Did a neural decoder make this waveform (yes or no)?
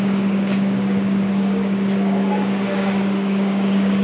yes